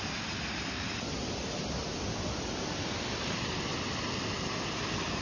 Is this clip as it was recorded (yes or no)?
yes